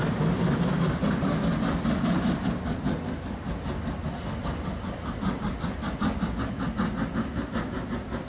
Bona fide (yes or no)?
yes